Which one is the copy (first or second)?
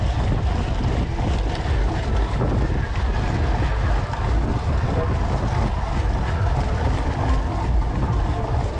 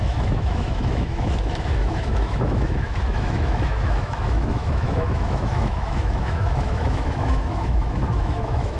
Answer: second